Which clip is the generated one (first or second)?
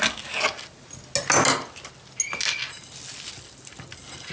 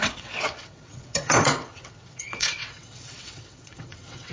second